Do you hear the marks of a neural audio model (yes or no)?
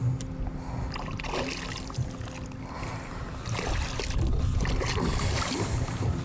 no